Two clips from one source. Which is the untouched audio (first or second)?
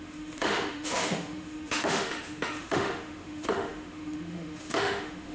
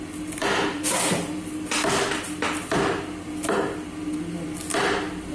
second